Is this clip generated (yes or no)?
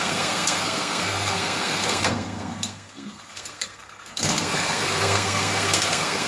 yes